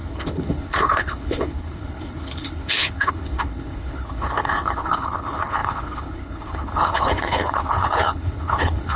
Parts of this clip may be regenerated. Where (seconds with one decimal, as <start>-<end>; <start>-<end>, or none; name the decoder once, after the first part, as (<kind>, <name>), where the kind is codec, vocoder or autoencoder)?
0.0-9.0 (codec, HILCodec)